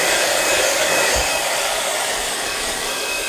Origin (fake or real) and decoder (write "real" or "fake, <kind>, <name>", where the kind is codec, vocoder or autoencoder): fake, codec, DAC